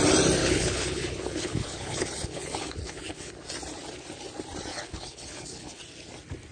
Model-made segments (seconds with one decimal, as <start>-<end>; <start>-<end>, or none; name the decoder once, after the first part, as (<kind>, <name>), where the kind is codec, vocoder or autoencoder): 0.4-3.3 (codec, HILCodec); 4.7-5.8